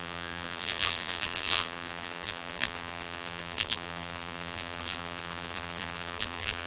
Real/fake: fake